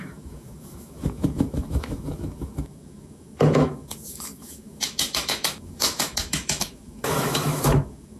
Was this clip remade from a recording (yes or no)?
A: yes